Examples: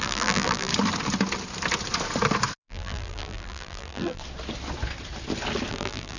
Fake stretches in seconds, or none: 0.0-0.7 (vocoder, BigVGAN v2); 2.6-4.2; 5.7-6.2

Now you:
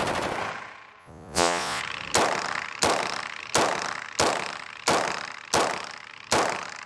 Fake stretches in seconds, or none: 1.0-1.8 (vocoder, Vocos)

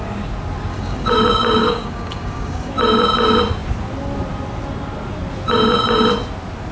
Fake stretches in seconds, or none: 0.7-1.2 (codec, DAC); 1.6-2.7

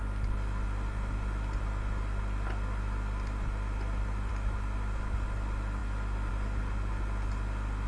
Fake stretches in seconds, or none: none